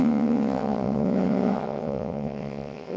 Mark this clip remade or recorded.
remade